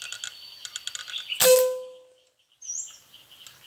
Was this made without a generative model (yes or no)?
yes